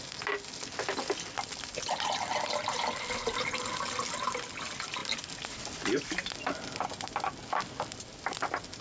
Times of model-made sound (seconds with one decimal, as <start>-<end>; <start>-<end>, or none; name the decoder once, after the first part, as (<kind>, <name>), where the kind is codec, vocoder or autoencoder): none